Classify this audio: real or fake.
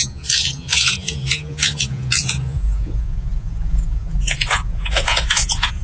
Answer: fake